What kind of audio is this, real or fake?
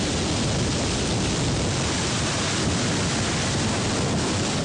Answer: real